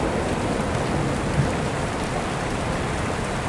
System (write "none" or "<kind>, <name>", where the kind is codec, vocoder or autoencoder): none